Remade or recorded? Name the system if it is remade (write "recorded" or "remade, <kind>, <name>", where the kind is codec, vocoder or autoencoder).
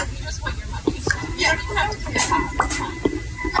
recorded